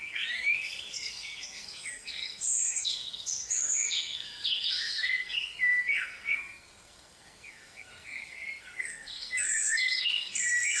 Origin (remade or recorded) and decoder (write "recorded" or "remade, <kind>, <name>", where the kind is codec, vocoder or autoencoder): remade, codec, SNAC